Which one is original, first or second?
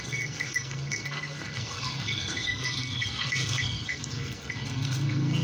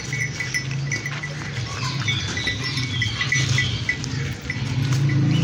second